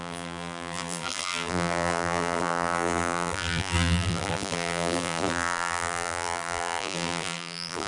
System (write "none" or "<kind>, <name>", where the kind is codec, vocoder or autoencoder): vocoder, BigVGAN v2